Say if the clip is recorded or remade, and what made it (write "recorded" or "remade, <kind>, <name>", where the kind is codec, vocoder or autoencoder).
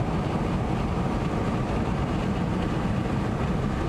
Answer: recorded